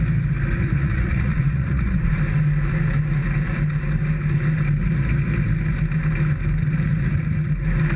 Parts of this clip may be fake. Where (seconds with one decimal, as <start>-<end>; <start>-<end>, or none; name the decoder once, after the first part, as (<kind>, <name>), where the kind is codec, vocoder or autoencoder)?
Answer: 0.6-2.2 (vocoder, Vocos)